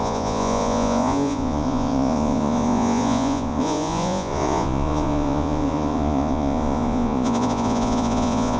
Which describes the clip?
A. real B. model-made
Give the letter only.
B